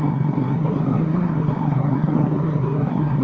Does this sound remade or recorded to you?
remade